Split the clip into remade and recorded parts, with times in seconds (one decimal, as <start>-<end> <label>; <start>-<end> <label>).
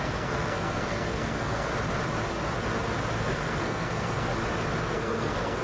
0.0-1.7 remade; 1.7-3.2 recorded; 3.2-4.3 remade; 4.3-4.8 recorded; 4.8-5.6 remade